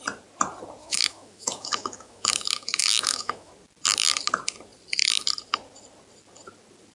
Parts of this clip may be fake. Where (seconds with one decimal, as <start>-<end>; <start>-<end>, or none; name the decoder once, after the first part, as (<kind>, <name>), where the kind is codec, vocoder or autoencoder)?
0.8-3.5 (autoencoder, DAC-VAE)

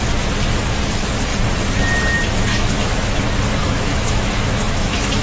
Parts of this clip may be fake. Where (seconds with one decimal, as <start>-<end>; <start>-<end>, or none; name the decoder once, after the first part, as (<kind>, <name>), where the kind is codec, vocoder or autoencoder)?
2.5-3.2 (autoencoder, DAC-VAE); 3.6-5.2

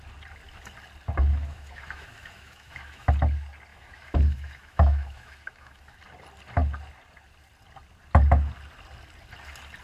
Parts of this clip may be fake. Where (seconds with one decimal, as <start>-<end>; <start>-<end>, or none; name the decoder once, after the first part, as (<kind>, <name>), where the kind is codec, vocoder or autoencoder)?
1.3-3.1 (autoencoder, DAC-VAE); 3.7-6.0

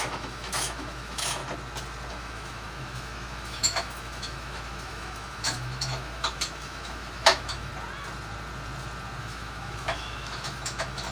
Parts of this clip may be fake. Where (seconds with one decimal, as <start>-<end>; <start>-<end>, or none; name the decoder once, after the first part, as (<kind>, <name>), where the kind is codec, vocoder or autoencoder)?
0.0-1.4 (autoencoder, DAC-VAE); 2.1-7.7; 9.2-11.1

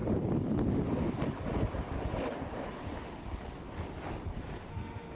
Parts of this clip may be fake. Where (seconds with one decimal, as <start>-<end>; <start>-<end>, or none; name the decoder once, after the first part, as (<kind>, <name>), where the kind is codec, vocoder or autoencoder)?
4.7-5.2 (autoencoder, DAC-VAE)